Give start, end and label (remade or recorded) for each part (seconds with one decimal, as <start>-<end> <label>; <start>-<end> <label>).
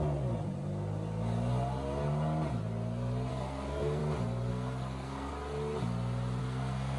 0.0-3.3 recorded; 3.3-4.0 remade; 4.0-4.5 recorded; 4.5-5.3 remade; 5.3-6.4 recorded; 6.4-7.0 remade